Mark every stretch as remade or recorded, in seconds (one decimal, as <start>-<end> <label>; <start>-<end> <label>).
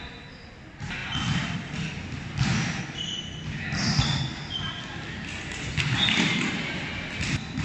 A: 0.0-7.6 recorded